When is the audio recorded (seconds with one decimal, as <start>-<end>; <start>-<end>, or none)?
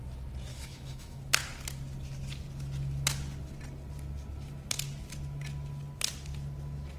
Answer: 0.0-0.5; 1.2-7.0